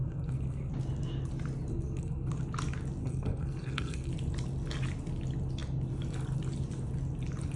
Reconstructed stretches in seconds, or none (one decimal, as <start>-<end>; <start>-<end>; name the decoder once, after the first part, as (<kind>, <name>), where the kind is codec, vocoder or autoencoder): 0.0-0.7 (codec, SNAC); 1.7-2.3; 3.0-4.1